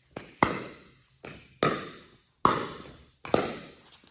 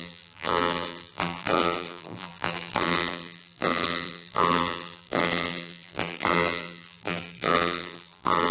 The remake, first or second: second